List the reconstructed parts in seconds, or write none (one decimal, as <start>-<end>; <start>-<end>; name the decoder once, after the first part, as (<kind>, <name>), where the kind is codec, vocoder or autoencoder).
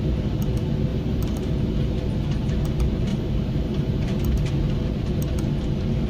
0.9-1.5 (vocoder, BigVGAN v2); 3.1-4.5